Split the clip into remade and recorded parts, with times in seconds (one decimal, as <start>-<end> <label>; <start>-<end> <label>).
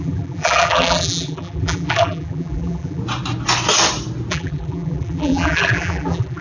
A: 0.0-3.0 remade; 3.0-4.3 recorded; 4.3-6.4 remade